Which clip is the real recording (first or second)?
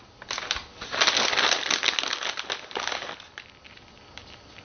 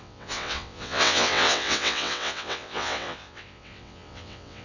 first